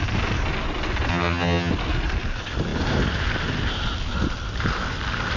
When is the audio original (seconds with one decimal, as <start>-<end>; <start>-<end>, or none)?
0.0-1.1; 1.7-5.4